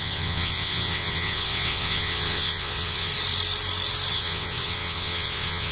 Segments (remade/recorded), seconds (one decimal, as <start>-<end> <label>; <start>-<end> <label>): 0.0-3.1 remade; 3.1-4.1 recorded; 4.1-5.7 remade